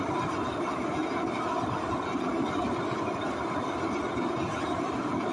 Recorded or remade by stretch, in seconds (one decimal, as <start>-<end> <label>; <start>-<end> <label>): 0.0-0.8 remade; 0.8-2.2 recorded; 2.2-2.6 remade; 2.6-4.5 recorded; 4.5-5.3 remade